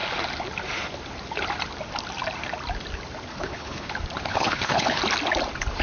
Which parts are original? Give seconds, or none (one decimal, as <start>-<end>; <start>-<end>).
0.0-3.3; 3.9-4.3; 5.0-5.8